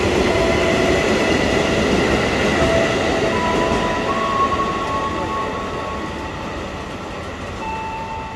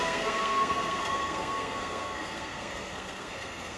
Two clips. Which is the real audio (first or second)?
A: first